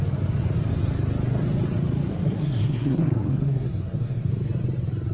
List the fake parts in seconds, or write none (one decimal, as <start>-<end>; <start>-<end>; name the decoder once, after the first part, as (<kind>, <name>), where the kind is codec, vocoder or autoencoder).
2.1-4.3 (codec, SNAC)

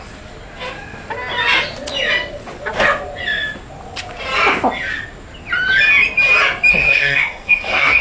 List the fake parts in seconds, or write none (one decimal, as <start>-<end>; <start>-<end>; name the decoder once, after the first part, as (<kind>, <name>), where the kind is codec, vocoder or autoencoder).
6.7-8.0 (codec, SNAC)

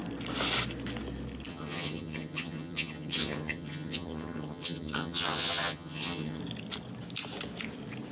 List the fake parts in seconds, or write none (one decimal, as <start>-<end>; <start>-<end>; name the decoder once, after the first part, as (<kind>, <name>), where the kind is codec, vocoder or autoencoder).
1.5-6.4 (vocoder, HiFi-GAN)

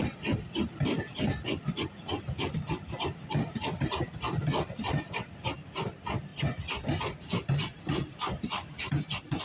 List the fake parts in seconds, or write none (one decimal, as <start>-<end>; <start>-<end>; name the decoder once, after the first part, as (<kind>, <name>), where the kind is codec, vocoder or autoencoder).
none

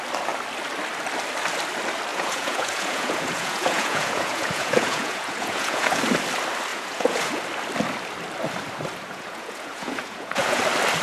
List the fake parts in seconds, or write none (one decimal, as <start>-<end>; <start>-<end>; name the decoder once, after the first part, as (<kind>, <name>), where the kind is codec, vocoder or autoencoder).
2.1-6.0 (vocoder, Vocos); 6.7-7.4; 9.1-10.6

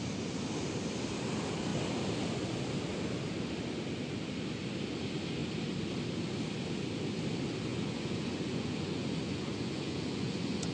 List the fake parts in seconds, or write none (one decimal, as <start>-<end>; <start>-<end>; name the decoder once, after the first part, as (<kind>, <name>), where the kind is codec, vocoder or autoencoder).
7.7-10.7 (vocoder, Vocos)